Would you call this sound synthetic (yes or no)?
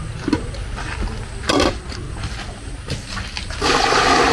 no